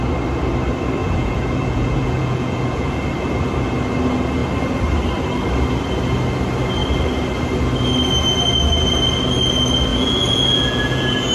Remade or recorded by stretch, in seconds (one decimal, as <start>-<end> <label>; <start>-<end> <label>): 0.0-1.0 recorded; 1.0-3.0 remade; 3.0-9.9 recorded; 9.9-11.3 remade